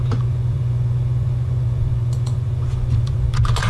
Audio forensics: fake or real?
fake